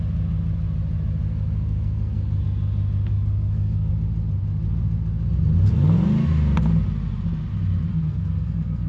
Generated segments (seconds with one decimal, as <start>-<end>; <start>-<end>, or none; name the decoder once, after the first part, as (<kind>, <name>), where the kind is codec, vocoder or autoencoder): 1.3-2.4 (codec, SNAC); 3.1-3.9; 7.9-8.9